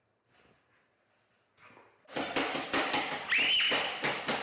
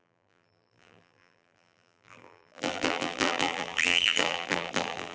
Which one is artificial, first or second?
second